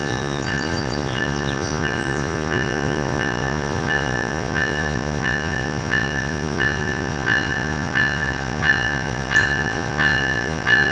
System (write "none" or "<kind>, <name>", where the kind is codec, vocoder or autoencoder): vocoder, Vocos